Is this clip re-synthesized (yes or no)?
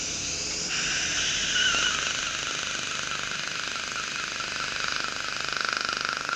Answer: no